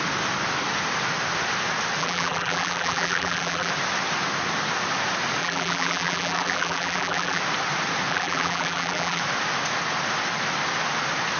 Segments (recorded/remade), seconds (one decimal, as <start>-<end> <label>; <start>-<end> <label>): 0.0-2.0 recorded; 2.0-3.7 remade; 3.7-5.4 recorded; 5.4-7.4 remade; 7.4-8.1 recorded; 8.1-9.2 remade; 9.2-11.4 recorded

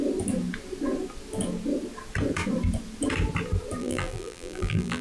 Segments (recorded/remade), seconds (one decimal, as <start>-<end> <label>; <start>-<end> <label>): 0.0-3.8 recorded; 3.8-5.0 remade

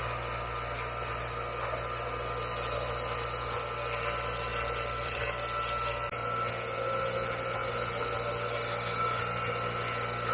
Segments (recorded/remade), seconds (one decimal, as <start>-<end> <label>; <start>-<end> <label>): 0.0-4.5 recorded; 4.5-5.2 remade; 5.2-10.3 recorded

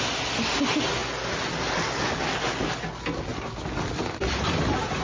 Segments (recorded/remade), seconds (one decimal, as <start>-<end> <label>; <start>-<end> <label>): 0.0-1.0 recorded; 1.0-2.5 remade; 2.5-5.0 recorded

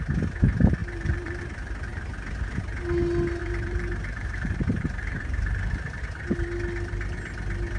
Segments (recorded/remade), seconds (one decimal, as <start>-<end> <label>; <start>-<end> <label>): 0.0-0.8 recorded; 0.8-1.4 remade; 1.4-3.4 recorded; 3.4-6.0 remade; 6.0-7.8 recorded

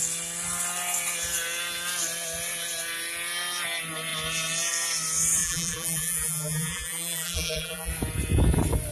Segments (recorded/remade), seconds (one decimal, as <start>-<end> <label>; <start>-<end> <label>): 0.0-5.4 recorded; 5.4-7.9 remade; 7.9-8.9 recorded

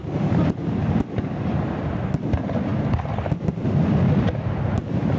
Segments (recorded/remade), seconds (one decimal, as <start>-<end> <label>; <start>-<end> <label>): 0.0-1.8 remade; 1.8-2.7 recorded; 2.7-4.0 remade; 4.0-5.2 recorded